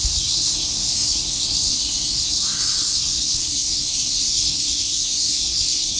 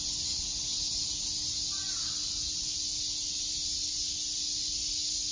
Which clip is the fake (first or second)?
first